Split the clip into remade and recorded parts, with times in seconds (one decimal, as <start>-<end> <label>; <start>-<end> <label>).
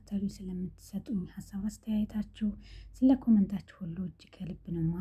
0.0-5.0 recorded